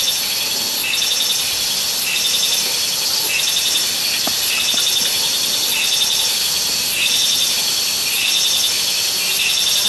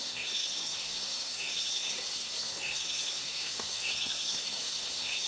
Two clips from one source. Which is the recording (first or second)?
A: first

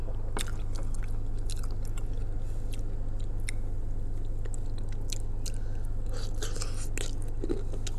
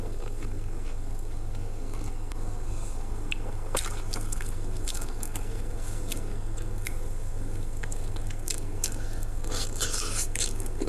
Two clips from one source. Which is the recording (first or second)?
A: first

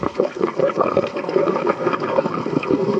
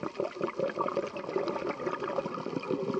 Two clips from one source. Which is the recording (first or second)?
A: second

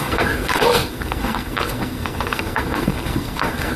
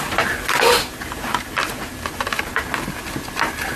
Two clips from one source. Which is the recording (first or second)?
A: second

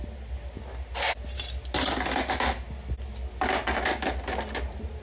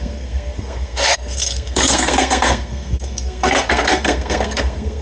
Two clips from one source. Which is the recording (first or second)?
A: first